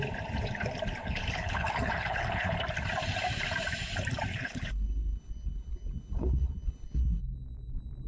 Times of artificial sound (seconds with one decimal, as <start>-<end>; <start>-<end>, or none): 1.0-2.6; 4.3-7.2